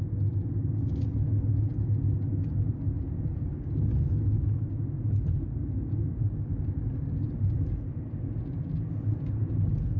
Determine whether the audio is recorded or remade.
recorded